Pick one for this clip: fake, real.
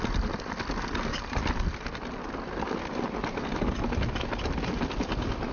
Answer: real